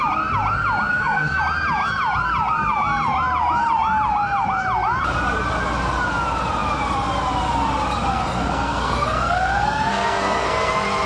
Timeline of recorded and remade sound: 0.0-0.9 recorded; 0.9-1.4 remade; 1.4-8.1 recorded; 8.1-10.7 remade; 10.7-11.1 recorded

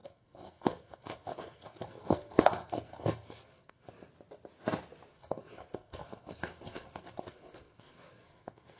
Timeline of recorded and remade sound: 0.0-3.9 remade; 3.9-5.1 recorded; 5.1-8.8 remade

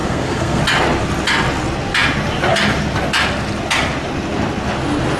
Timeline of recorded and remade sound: 0.0-0.6 remade; 0.6-5.2 recorded

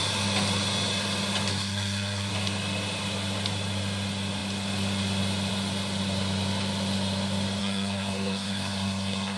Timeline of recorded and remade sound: 0.0-1.5 recorded; 1.5-2.3 remade; 2.3-7.6 recorded; 7.6-9.4 remade

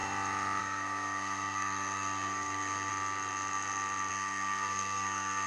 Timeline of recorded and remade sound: 0.0-0.6 recorded; 0.6-2.9 remade; 2.9-4.1 recorded; 4.1-5.5 remade

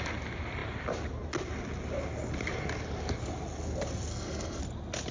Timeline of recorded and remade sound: 0.0-4.1 recorded; 4.1-4.6 remade; 4.6-5.1 recorded

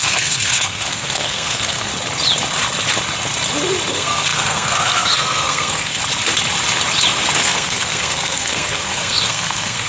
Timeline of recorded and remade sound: 0.0-1.9 remade; 1.9-3.9 recorded; 3.9-6.0 remade; 6.0-7.4 recorded; 7.4-9.9 remade